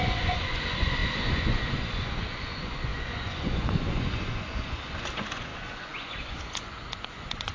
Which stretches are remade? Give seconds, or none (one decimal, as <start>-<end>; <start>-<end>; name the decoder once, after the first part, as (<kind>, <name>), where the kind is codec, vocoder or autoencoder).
0.0-7.5 (vocoder, Vocos)